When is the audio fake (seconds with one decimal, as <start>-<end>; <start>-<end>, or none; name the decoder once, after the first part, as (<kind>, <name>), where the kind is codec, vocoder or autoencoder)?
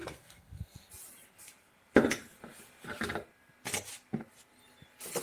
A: 0.0-0.9 (codec, SNAC)